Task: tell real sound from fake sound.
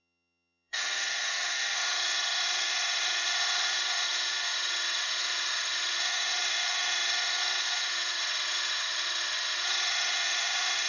fake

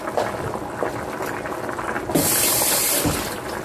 real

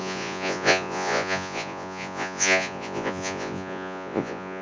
fake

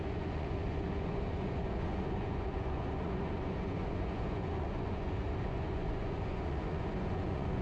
fake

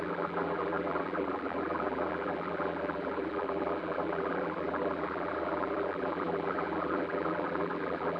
fake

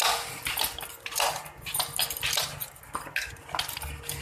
real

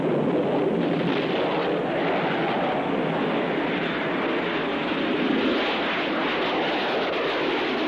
real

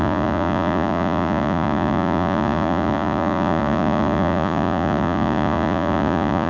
fake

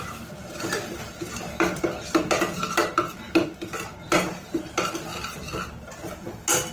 real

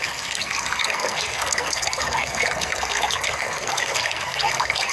fake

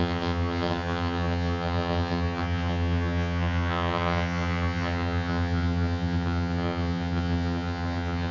fake